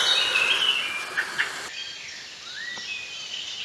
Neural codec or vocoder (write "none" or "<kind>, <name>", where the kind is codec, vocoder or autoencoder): none